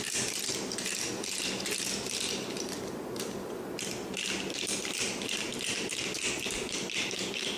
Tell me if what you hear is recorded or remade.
recorded